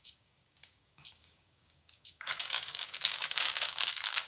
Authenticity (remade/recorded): remade